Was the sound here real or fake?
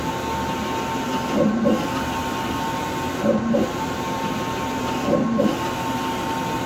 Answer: real